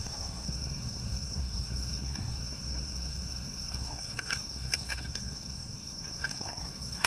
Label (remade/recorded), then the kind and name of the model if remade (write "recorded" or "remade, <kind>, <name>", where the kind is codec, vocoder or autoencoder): remade, codec, SNAC